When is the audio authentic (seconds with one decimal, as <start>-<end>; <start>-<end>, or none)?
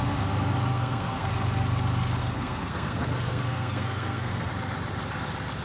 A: 0.0-0.7; 1.3-2.2; 4.5-5.6